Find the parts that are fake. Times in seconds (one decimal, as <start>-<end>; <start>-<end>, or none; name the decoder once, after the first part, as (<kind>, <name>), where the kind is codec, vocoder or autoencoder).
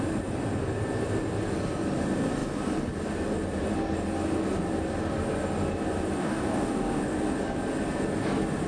6.2-7.0 (codec, DAC)